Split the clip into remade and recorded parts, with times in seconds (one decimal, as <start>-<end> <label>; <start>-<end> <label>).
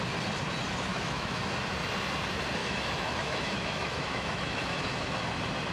0.0-0.9 recorded; 0.9-1.4 remade; 1.4-2.6 recorded; 2.6-5.2 remade; 5.2-5.7 recorded